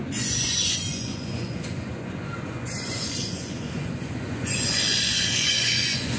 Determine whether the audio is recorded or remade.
remade